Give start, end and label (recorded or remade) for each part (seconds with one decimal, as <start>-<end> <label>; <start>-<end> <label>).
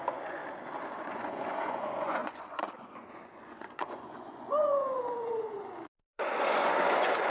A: 0.0-0.4 remade; 0.4-0.9 recorded; 0.9-7.3 remade